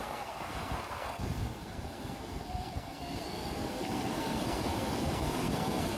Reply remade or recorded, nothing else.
remade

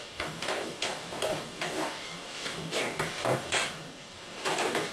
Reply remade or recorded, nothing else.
remade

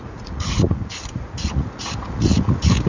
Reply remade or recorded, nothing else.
remade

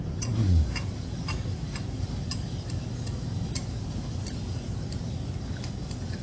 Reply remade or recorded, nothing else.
recorded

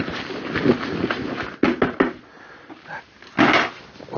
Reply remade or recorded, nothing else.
recorded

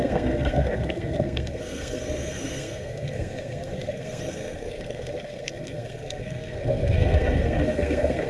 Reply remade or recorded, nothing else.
remade